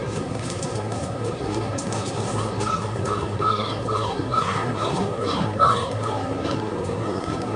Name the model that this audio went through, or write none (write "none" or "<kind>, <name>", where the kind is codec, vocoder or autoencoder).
codec, SNAC